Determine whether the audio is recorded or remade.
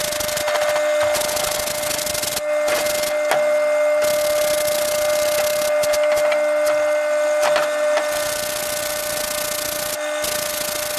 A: recorded